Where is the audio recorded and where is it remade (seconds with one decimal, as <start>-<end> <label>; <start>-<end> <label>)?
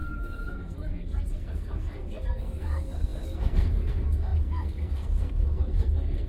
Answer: 0.0-6.3 remade